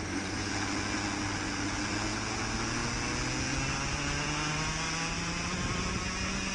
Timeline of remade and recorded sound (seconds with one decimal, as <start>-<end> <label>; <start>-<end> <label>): 0.0-0.5 remade; 0.5-6.5 recorded